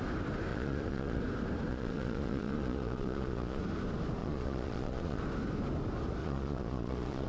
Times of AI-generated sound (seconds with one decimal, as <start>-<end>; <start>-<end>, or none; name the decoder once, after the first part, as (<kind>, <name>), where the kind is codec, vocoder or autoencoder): 0.5-1.2 (vocoder, Vocos); 1.7-3.6; 4.2-5.2; 6.2-7.3